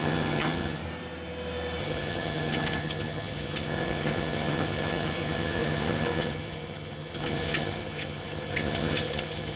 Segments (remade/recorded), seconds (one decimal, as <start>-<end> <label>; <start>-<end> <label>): 0.0-0.8 remade; 0.8-1.8 recorded; 1.8-9.6 remade

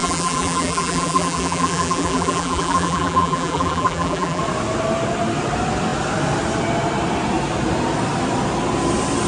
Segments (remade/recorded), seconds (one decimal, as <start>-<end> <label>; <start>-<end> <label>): 0.0-4.4 remade; 4.4-9.3 recorded

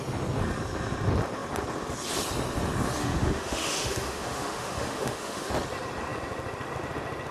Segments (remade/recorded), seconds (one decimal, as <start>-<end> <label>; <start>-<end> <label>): 0.0-3.0 recorded; 3.0-5.5 remade; 5.5-7.3 recorded

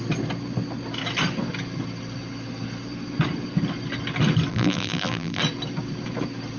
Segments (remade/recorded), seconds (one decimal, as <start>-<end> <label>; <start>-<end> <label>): 0.0-4.5 recorded; 4.5-5.4 remade; 5.4-6.6 recorded

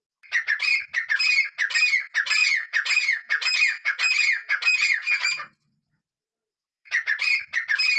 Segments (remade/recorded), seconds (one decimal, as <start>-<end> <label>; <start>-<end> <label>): 0.0-2.4 recorded; 2.4-6.9 remade; 6.9-8.0 recorded

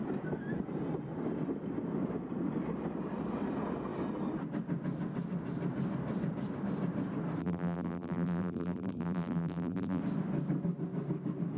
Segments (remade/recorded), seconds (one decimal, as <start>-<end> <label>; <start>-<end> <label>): 0.0-7.4 recorded; 7.4-10.0 remade; 10.0-11.6 recorded